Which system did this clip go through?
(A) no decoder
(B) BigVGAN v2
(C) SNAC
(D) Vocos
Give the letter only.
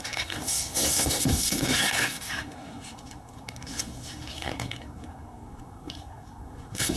C